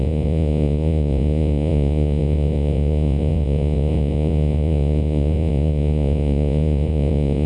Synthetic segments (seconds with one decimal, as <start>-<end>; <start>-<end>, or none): 0.0-7.5